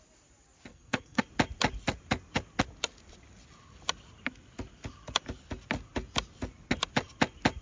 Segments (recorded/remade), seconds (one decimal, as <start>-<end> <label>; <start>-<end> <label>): 0.0-0.7 recorded; 0.7-1.2 remade; 1.2-7.6 recorded